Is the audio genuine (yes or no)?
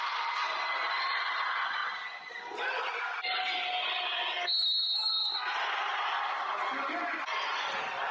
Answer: yes